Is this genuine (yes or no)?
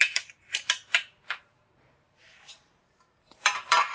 no